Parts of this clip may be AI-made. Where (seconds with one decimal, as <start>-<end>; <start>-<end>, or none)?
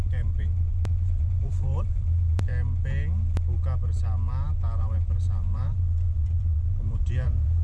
0.0-2.5; 4.8-7.6